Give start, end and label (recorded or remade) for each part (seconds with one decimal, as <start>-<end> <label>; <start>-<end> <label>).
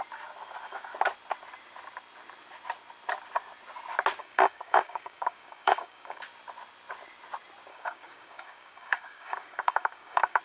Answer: 0.0-4.2 recorded; 4.2-6.2 remade; 6.2-7.7 recorded; 7.7-10.4 remade